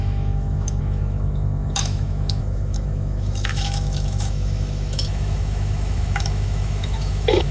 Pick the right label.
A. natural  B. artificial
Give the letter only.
B